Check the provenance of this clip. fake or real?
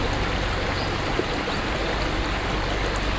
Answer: real